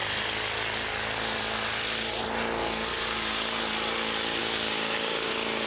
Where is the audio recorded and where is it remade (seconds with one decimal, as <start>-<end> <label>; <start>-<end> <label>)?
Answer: 0.0-2.9 recorded; 2.9-3.6 remade; 3.6-4.4 recorded; 4.4-5.3 remade; 5.3-5.7 recorded